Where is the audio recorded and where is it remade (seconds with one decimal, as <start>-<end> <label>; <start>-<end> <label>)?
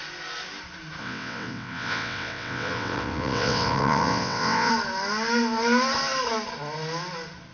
0.0-1.0 recorded; 1.0-4.7 remade; 4.7-7.5 recorded